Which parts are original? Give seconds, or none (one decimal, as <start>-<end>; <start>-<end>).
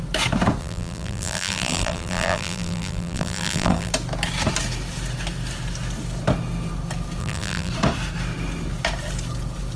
0.0-0.6; 3.9-7.2; 7.7-9.8